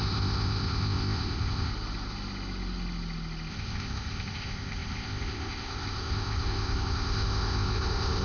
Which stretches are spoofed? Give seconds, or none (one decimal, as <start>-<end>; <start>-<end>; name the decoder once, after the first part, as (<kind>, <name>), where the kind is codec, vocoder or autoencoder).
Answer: 0.0-1.7 (codec, ZipCodec); 3.5-8.2